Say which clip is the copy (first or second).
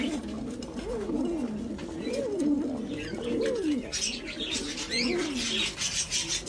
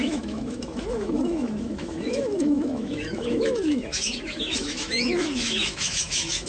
second